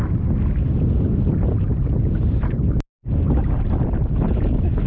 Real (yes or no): yes